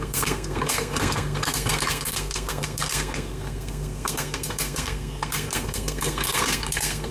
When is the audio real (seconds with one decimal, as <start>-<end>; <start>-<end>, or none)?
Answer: none